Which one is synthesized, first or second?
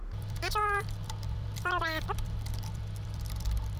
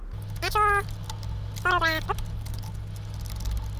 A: first